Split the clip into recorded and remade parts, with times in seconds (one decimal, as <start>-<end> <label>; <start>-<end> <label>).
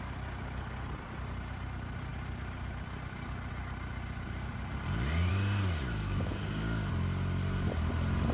0.0-6.0 recorded; 6.0-6.9 remade; 6.9-8.3 recorded